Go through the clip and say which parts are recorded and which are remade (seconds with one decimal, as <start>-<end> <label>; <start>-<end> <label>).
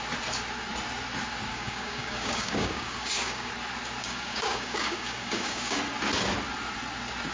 0.0-1.5 recorded; 1.5-3.5 remade; 3.5-4.0 recorded; 4.0-5.8 remade; 5.8-7.3 recorded